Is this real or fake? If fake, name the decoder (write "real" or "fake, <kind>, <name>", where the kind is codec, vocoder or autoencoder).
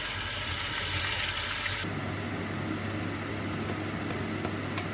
real